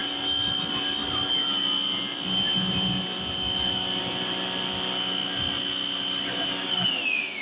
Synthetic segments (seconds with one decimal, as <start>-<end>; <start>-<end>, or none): none